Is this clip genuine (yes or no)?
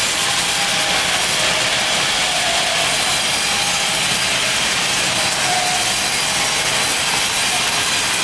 yes